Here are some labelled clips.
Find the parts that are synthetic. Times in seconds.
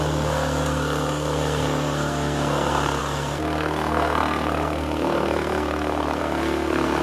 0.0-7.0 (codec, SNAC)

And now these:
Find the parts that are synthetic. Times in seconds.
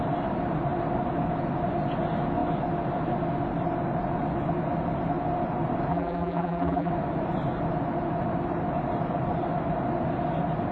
5.9-6.9 (vocoder, BigVGAN v2)